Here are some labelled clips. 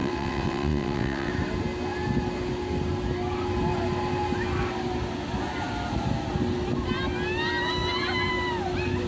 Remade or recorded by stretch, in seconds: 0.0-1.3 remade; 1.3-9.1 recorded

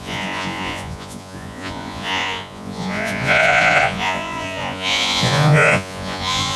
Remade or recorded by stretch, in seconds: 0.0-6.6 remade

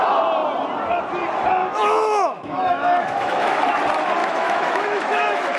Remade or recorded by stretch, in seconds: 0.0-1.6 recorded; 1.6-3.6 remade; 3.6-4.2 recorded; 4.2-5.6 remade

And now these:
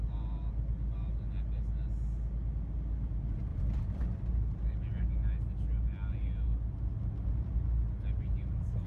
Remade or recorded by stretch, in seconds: 0.0-8.9 recorded

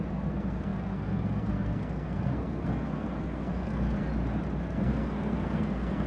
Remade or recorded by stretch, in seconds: 0.0-4.1 remade; 4.1-4.6 recorded; 4.6-6.1 remade